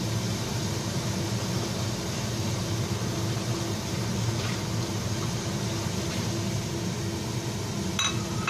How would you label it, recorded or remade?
recorded